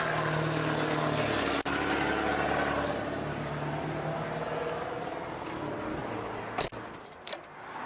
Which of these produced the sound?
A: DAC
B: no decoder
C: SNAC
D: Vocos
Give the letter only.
B